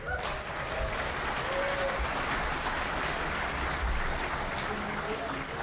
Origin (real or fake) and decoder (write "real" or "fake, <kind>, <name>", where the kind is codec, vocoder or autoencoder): real